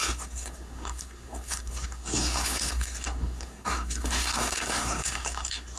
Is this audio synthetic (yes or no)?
yes